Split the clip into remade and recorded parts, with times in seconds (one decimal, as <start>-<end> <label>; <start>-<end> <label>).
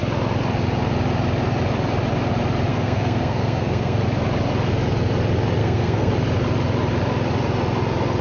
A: 0.0-2.7 recorded; 2.7-4.0 remade; 4.0-5.6 recorded; 5.6-6.1 remade; 6.1-8.2 recorded